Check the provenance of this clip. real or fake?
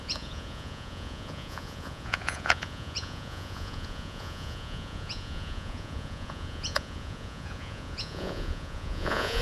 fake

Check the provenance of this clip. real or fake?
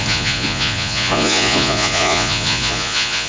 fake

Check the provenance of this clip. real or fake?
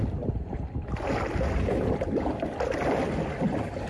real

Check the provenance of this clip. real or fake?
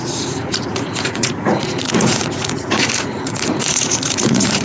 fake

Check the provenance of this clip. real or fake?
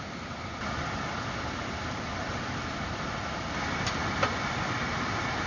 real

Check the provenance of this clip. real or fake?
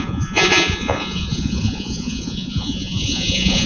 fake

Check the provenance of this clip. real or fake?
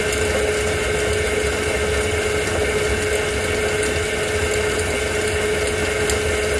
real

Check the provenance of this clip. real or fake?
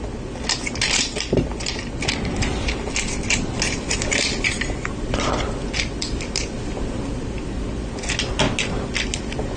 real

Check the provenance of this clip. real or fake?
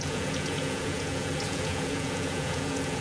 fake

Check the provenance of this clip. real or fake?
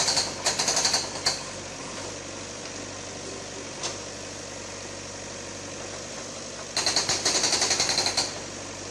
real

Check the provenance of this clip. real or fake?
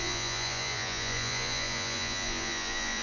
fake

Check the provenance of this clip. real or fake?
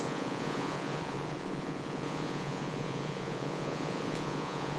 fake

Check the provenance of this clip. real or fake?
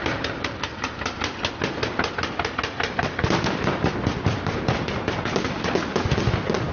real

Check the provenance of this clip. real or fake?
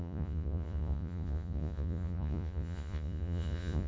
fake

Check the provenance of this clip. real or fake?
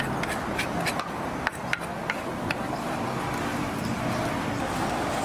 real